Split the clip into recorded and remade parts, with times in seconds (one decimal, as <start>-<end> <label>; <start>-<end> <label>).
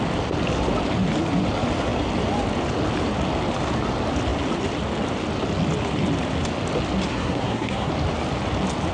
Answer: 0.0-7.1 recorded; 7.1-7.9 remade; 7.9-8.9 recorded